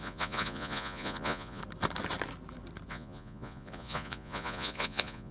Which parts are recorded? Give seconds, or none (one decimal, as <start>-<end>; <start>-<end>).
1.6-2.9